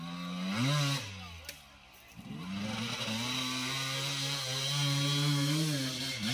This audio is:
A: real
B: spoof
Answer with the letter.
A